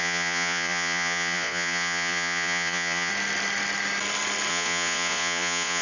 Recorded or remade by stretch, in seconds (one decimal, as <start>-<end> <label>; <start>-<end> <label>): 0.0-3.1 remade; 3.1-4.5 recorded; 4.5-5.8 remade